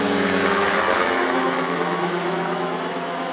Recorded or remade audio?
remade